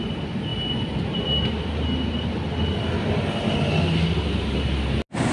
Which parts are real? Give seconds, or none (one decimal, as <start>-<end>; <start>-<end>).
0.0-5.3